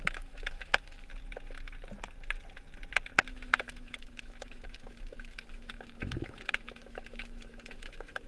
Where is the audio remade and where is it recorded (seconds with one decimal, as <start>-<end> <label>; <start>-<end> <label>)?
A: 0.0-1.1 remade; 1.1-3.3 recorded; 3.3-8.3 remade

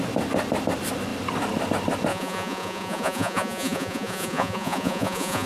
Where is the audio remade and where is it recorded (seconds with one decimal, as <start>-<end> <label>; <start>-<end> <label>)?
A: 0.0-2.1 recorded; 2.1-5.5 remade

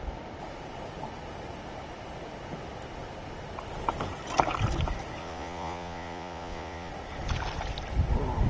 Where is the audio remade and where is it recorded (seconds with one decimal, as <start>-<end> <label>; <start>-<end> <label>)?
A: 0.0-5.2 recorded; 5.2-6.9 remade; 6.9-8.5 recorded

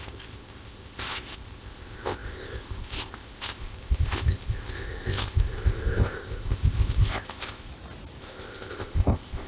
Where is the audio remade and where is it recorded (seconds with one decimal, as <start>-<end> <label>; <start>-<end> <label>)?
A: 0.0-7.7 remade; 7.7-8.2 recorded; 8.2-9.5 remade